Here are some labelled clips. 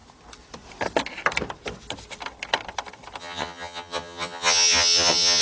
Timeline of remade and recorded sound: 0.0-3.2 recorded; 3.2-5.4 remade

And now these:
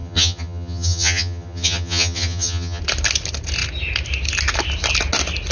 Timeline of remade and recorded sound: 0.0-2.8 remade; 2.8-5.5 recorded

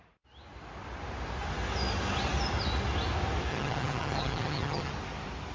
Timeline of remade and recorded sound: 0.0-3.5 recorded; 3.5-4.9 remade; 4.9-5.5 recorded

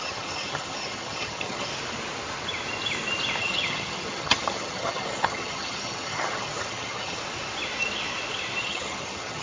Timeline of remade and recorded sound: 0.0-1.7 remade; 1.7-3.4 recorded; 3.4-7.2 remade; 7.2-8.6 recorded; 8.6-9.4 remade

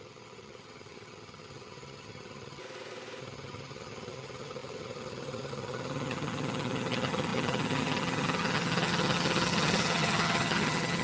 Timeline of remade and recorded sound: 0.0-2.6 remade; 2.6-3.2 recorded; 3.2-11.0 remade

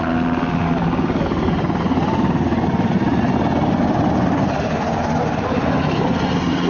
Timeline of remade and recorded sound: 0.0-6.7 recorded

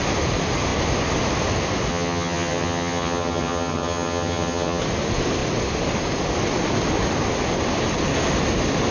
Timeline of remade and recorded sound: 0.0-1.9 recorded; 1.9-4.8 remade; 4.8-8.9 recorded